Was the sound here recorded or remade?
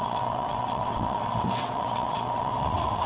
remade